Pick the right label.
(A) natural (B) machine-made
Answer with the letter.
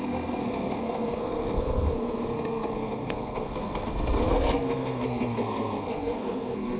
B